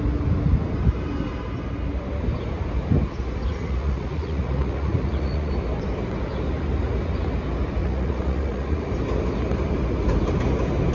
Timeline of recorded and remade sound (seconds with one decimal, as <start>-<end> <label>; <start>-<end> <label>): 0.0-3.5 recorded; 3.5-5.5 remade; 5.5-7.8 recorded; 7.8-8.9 remade; 8.9-10.9 recorded